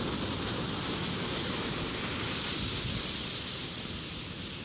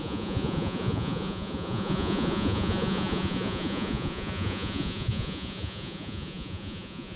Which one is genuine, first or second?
first